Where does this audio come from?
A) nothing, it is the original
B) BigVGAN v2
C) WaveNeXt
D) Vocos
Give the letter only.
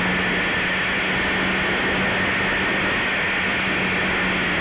A